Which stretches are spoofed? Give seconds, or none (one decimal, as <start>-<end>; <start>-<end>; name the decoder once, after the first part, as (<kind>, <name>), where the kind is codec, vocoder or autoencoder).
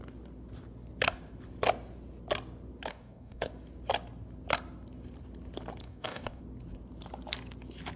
2.9-3.5 (codec, DAC); 5.8-6.4